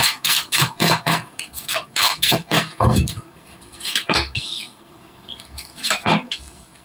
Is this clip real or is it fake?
fake